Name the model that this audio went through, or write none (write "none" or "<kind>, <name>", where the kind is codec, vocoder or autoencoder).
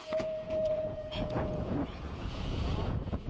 vocoder, Vocos